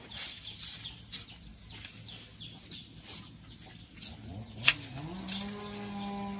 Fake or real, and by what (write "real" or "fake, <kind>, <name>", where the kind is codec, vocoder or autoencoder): real